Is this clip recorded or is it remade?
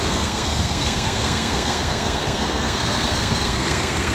remade